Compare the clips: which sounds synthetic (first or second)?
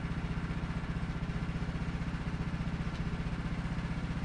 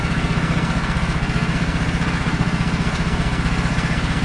second